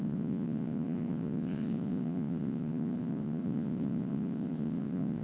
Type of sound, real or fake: fake